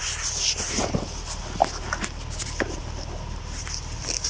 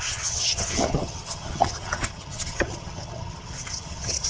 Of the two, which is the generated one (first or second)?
second